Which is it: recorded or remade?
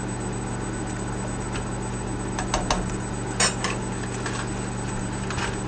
recorded